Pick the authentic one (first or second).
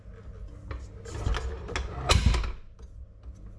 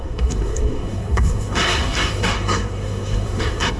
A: first